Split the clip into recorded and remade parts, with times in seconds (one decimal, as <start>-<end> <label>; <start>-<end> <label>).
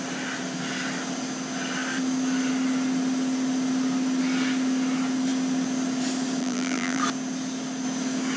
0.0-6.4 recorded; 6.4-7.0 remade; 7.0-8.4 recorded